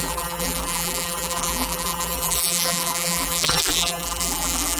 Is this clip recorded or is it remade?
remade